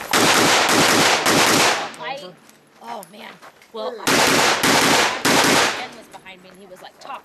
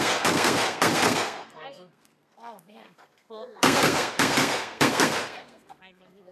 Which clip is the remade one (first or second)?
second